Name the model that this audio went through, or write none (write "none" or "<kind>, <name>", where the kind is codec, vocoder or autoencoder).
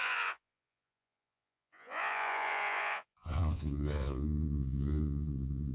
vocoder, Vocos